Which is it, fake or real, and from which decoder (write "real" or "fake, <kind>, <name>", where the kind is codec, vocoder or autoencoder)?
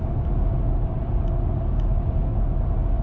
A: real